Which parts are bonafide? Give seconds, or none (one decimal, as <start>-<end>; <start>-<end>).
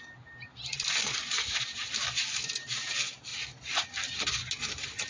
0.0-5.1